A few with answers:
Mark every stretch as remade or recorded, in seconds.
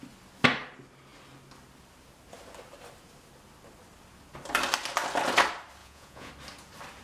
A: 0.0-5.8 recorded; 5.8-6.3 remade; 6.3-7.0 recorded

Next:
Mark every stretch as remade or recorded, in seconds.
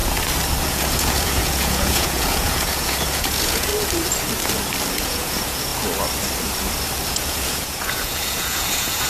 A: 0.0-0.7 recorded; 0.7-3.7 remade; 3.7-4.9 recorded; 4.9-5.7 remade; 5.7-7.1 recorded; 7.1-9.1 remade